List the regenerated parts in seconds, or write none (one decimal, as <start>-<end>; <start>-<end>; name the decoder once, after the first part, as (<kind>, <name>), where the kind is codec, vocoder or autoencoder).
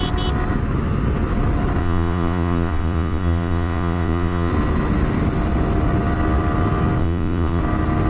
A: 1.8-4.5 (vocoder, Vocos); 7.0-7.6